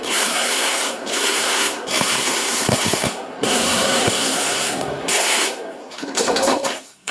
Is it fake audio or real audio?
fake